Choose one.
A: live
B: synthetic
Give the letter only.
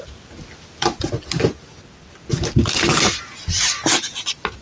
A